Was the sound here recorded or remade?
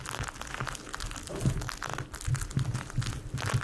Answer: recorded